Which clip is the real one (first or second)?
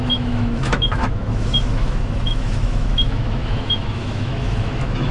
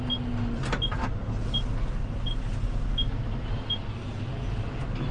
second